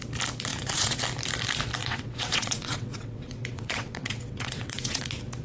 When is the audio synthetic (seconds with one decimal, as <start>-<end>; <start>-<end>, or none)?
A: 0.5-1.0; 1.8-5.0